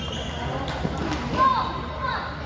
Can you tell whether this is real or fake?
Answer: real